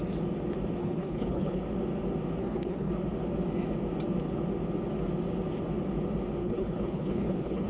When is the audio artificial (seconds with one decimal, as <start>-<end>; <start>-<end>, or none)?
0.8-1.6; 2.4-2.9; 6.4-7.7